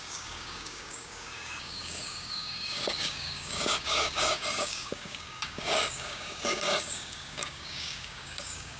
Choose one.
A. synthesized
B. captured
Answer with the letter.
A